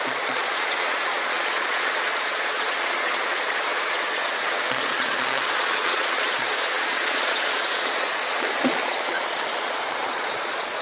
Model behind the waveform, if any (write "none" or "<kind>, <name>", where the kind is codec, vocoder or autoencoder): vocoder, Vocos